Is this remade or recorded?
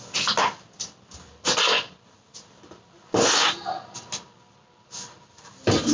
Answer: recorded